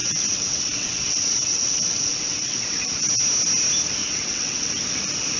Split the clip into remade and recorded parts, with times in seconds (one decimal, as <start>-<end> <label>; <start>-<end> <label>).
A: 0.0-2.6 remade; 2.6-4.0 recorded; 4.0-4.7 remade; 4.7-5.4 recorded